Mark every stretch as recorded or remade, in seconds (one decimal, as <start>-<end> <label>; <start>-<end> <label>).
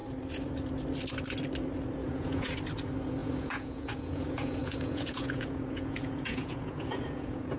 0.0-2.0 recorded; 2.0-2.5 remade; 2.5-3.2 recorded; 3.2-7.6 remade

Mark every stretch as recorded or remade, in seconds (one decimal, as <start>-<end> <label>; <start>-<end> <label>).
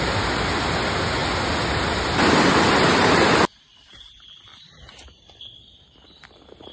0.0-6.7 recorded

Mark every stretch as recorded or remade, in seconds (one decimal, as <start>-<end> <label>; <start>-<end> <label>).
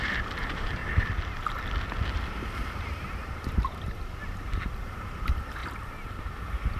0.0-0.8 remade; 0.8-2.8 recorded; 2.8-5.6 remade; 5.6-6.2 recorded; 6.2-6.8 remade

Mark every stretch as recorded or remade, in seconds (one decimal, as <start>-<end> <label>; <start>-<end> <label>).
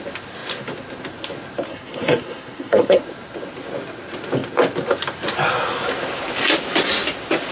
0.0-1.7 recorded; 1.7-3.0 remade; 3.0-7.5 recorded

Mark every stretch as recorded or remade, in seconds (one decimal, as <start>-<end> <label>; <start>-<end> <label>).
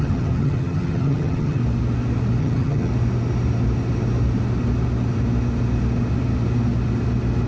0.0-1.6 remade; 1.6-2.4 recorded; 2.4-2.9 remade; 2.9-7.5 recorded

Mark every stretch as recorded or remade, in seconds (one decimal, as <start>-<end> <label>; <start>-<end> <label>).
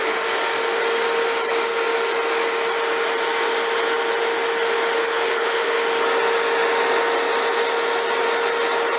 0.0-5.0 recorded; 5.0-5.8 remade; 5.8-9.0 recorded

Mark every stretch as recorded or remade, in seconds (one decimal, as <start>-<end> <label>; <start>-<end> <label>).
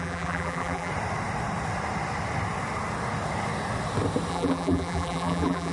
0.0-0.9 remade; 0.9-4.3 recorded; 4.3-5.7 remade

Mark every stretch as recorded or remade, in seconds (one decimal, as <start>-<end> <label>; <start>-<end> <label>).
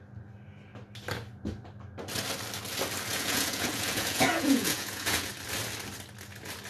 0.0-3.1 recorded; 3.1-5.3 remade; 5.3-6.7 recorded